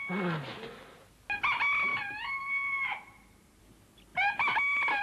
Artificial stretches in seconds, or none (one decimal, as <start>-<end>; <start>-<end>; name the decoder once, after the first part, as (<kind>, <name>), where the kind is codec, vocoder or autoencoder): 1.9-3.6 (vocoder, BigVGAN v2)